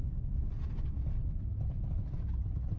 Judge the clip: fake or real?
real